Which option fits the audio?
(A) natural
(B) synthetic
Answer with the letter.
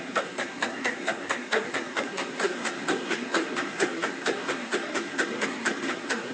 B